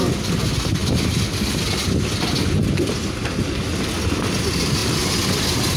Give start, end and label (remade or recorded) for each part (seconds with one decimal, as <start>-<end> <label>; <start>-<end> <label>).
0.0-4.8 recorded; 4.8-5.8 remade